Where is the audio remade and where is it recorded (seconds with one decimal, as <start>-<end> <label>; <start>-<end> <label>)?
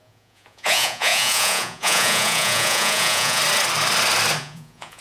0.0-3.4 remade; 3.4-4.4 recorded; 4.4-5.0 remade